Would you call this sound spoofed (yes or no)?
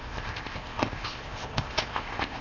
yes